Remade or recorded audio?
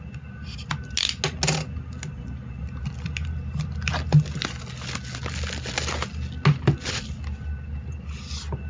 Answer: recorded